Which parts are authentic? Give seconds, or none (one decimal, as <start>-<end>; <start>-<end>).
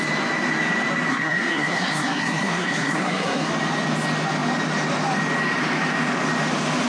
0.0-1.1; 3.5-6.9